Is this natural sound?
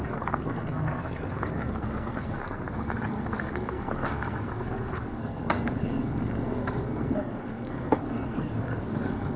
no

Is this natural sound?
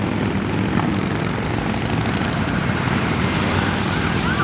yes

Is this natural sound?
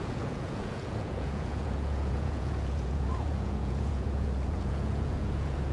no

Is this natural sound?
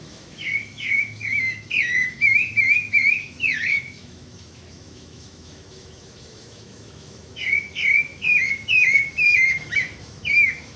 no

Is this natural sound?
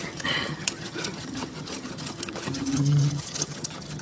no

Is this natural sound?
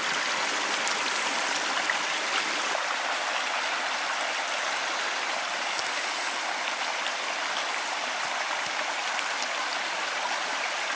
yes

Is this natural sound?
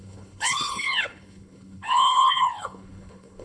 no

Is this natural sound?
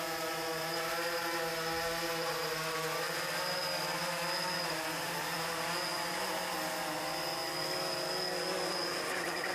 yes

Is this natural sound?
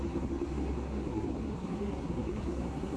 no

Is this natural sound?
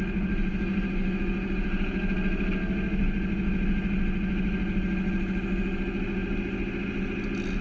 yes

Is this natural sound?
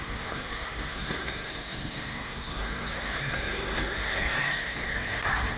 no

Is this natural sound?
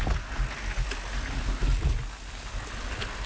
yes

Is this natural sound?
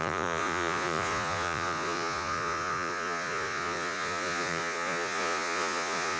no